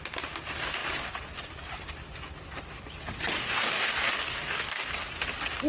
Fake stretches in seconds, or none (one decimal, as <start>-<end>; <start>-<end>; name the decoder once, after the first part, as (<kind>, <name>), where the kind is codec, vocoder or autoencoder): 3.4-3.9 (codec, DAC); 4.3-4.9